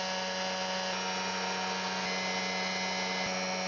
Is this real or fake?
real